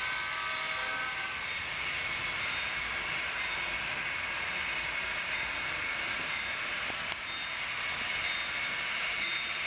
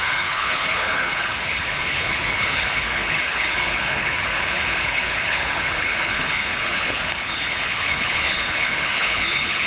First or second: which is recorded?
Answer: first